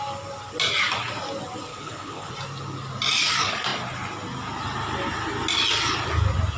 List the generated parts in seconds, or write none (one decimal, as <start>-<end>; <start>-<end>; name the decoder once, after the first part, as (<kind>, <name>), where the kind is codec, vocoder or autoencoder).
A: 1.7-2.3 (codec, HILCodec)